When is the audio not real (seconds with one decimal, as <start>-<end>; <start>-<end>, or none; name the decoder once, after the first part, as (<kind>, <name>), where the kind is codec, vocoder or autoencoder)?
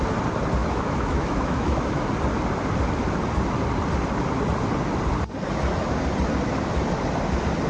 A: 0.6-2.1 (autoencoder, DAC-VAE)